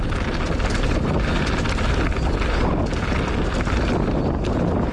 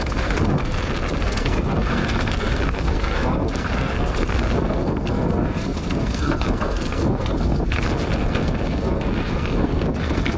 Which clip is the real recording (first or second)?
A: first